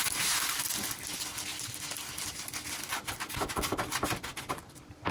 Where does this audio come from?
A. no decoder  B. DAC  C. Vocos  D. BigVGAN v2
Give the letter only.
A